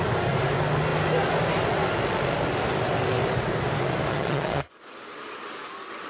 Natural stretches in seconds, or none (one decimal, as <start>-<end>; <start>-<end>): 0.0-4.1; 4.7-6.1